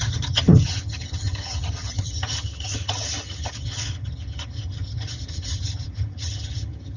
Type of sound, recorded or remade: remade